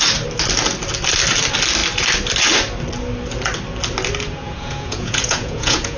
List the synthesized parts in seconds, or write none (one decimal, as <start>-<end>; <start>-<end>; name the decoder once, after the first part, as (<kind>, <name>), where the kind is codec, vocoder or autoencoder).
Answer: 4.4-6.0 (vocoder, Vocos)